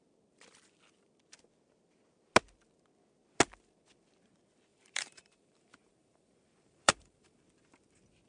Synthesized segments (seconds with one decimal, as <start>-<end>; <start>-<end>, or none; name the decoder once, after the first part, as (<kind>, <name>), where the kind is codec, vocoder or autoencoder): 4.7-7.4 (vocoder, BigVGAN v2)